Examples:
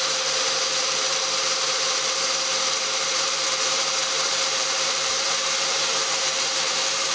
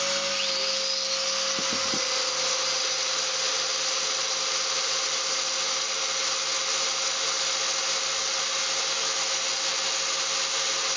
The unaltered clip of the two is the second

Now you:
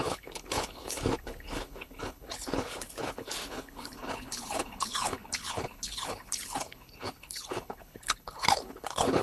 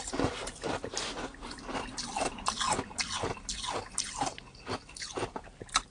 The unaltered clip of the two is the second